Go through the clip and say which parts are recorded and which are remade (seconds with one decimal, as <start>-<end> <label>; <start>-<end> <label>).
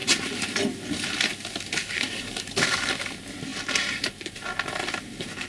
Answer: 0.0-1.8 recorded; 1.8-2.9 remade; 2.9-5.5 recorded